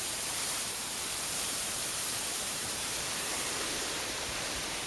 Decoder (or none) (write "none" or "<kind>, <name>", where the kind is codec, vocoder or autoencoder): vocoder, BigVGAN v2